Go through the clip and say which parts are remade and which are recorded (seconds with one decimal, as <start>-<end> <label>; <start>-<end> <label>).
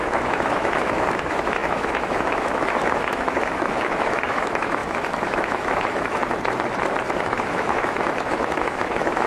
0.0-6.2 remade; 6.2-7.2 recorded; 7.2-9.3 remade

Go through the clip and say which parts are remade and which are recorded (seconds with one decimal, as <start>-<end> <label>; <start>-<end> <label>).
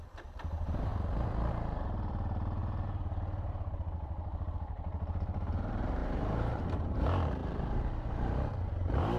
0.0-0.9 remade; 0.9-1.5 recorded; 1.5-9.2 remade